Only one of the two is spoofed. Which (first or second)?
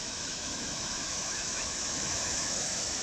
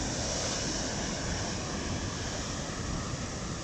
first